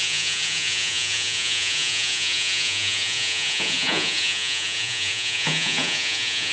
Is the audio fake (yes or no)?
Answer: yes